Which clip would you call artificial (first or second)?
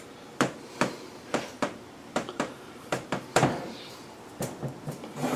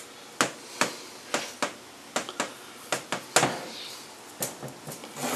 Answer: first